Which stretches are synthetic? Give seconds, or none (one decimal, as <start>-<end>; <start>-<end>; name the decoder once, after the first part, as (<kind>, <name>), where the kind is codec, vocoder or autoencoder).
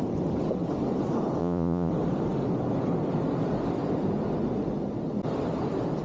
1.4-1.9 (vocoder, Vocos)